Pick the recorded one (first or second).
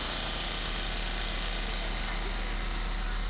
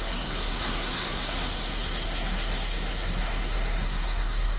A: first